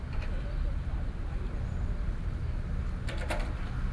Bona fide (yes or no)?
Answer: yes